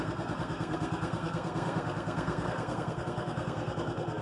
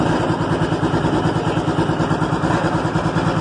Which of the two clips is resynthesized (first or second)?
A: first